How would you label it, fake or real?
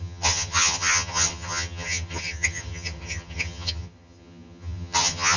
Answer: fake